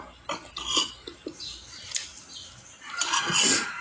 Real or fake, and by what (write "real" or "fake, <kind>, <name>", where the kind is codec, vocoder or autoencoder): real